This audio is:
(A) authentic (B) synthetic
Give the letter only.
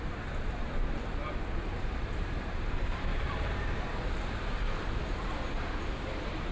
B